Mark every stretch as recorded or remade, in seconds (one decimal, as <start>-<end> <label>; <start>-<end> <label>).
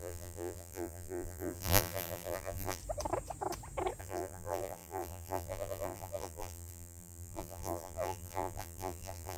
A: 0.0-2.8 remade; 2.8-4.0 recorded; 4.0-9.4 remade